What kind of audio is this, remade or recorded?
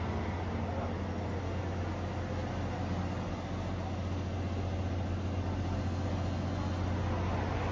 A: recorded